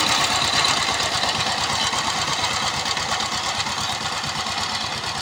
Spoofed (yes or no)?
no